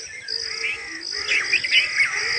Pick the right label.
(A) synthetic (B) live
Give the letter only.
B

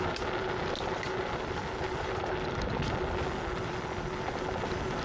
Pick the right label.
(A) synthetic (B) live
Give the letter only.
B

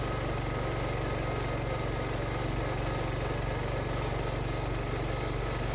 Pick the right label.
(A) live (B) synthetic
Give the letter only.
A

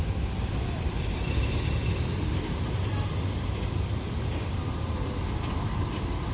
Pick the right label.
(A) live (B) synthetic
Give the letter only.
A